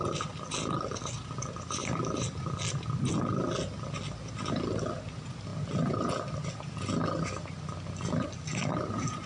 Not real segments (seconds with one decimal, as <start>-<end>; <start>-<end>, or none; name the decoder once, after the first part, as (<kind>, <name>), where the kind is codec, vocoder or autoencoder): none